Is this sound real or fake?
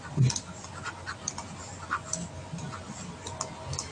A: real